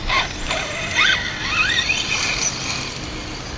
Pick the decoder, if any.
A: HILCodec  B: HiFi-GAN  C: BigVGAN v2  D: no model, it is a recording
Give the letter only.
D